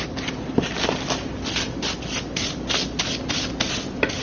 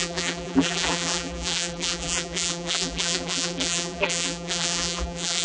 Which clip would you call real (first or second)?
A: first